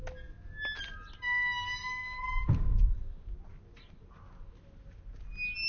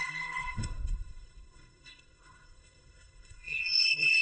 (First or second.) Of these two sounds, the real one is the first